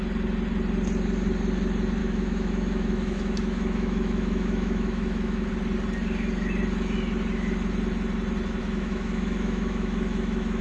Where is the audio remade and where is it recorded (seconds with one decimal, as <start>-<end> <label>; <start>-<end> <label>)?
0.0-2.0 recorded; 2.0-5.5 remade; 5.5-8.6 recorded; 8.6-10.6 remade